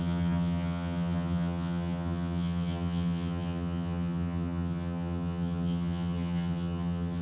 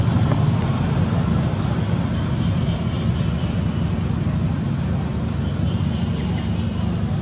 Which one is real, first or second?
second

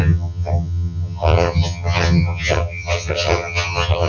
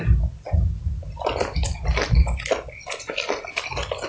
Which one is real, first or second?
second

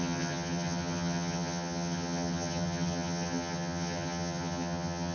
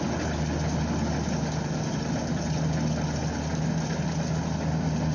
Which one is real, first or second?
second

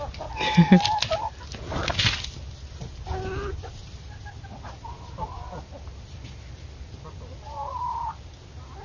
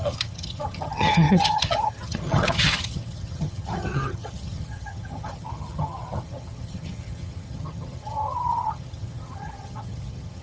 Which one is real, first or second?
first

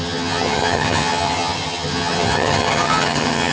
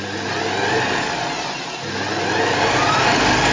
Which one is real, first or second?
second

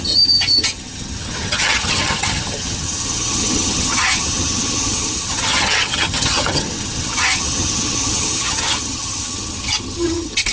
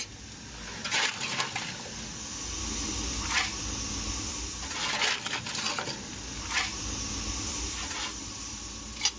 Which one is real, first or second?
second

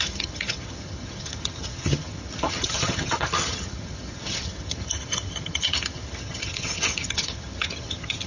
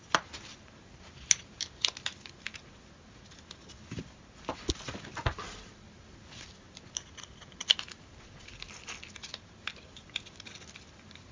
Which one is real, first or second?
second